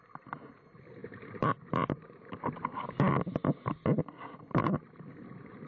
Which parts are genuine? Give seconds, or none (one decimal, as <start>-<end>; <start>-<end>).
0.0-1.0; 2.8-5.7